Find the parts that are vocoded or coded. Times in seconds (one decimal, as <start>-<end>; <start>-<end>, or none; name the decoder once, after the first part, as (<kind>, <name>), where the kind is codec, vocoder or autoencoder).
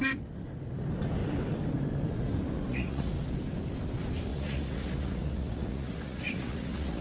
2.7-3.2 (vocoder, Vocos); 4.3-7.0